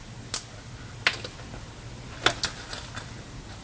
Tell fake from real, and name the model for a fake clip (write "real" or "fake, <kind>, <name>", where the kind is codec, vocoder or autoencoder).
real